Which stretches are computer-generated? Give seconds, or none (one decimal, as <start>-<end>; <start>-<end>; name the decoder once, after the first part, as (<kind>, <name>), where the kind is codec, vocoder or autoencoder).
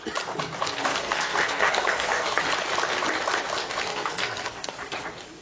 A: 0.9-2.4 (codec, SNAC); 3.9-4.7